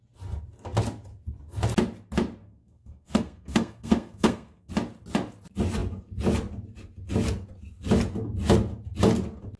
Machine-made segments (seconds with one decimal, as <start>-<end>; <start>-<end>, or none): 2.4-4.7

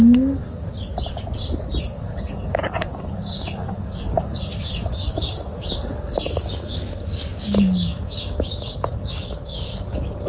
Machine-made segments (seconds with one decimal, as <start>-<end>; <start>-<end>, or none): 0.0-0.7; 1.8-10.3

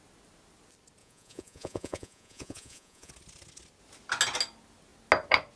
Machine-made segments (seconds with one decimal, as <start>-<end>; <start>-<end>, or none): 1.0-3.1

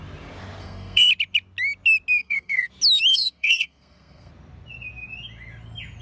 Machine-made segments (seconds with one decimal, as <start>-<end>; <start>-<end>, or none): 0.6-1.1; 2.2-2.7; 3.1-4.3

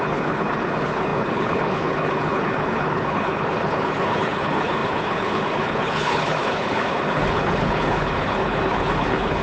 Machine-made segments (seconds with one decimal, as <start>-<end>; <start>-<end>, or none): 0.0-9.4